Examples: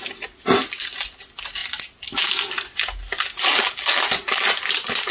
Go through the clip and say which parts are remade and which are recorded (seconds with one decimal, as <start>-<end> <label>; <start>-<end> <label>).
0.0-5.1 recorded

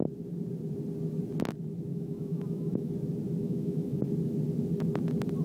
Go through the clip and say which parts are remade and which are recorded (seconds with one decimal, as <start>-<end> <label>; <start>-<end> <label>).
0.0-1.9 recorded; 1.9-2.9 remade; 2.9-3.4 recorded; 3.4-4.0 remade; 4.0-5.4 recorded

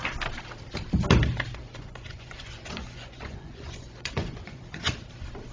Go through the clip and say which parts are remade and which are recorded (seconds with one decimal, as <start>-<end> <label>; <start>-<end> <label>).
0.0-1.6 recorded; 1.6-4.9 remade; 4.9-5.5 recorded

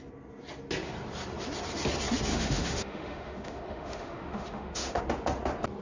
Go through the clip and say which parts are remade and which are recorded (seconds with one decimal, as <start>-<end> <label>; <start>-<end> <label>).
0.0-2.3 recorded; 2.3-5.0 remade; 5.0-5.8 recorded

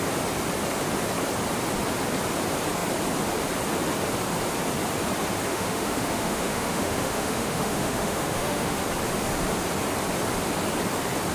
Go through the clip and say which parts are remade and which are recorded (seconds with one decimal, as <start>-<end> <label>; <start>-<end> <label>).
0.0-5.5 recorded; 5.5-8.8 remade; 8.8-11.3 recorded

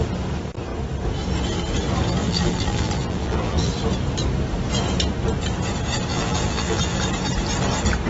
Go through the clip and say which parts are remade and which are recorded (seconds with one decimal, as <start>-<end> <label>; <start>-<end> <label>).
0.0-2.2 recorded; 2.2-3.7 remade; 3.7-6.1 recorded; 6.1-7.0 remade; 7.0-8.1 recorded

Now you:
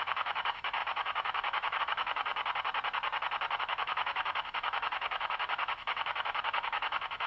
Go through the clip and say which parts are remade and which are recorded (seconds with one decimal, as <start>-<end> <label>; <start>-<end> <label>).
0.0-2.3 remade; 2.3-3.6 recorded; 3.6-7.3 remade